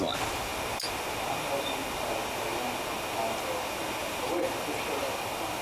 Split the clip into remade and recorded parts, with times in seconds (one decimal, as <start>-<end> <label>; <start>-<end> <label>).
0.0-5.6 recorded